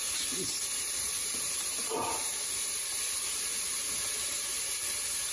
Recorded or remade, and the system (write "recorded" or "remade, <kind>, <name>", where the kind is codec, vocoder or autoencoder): recorded